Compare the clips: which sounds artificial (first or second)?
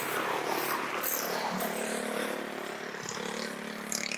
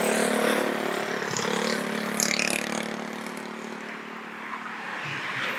first